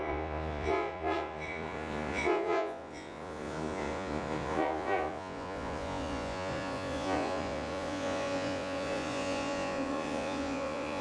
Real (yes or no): no